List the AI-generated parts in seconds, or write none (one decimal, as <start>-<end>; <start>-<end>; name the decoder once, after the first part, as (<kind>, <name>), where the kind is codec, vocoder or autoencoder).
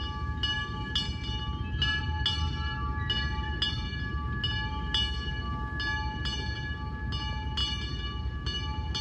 none